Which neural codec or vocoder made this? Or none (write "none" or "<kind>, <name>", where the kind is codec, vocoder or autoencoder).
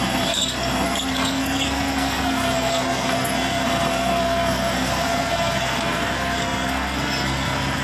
codec, SNAC